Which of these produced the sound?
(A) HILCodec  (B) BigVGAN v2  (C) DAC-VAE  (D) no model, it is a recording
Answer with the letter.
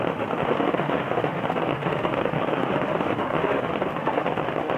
C